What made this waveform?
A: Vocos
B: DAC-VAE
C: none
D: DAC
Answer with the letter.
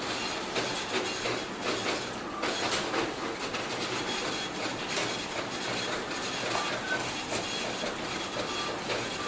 C